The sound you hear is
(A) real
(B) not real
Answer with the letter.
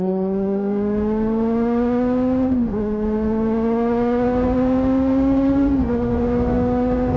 B